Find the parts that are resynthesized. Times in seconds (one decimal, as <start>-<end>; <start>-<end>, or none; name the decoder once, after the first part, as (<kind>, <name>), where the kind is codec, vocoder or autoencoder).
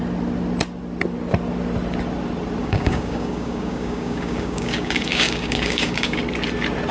2.6-6.2 (codec, DAC)